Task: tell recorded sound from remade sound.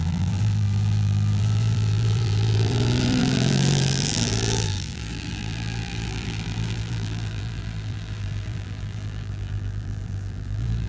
remade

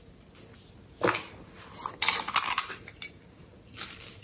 recorded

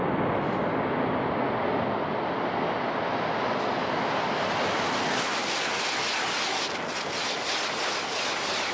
recorded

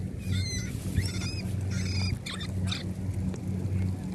recorded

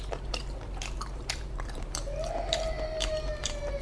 remade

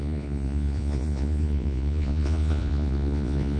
remade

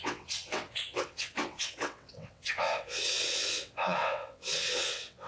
remade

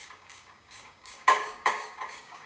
remade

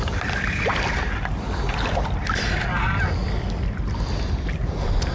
recorded